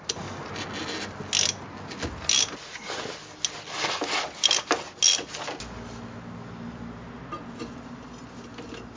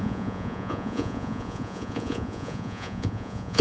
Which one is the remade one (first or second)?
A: second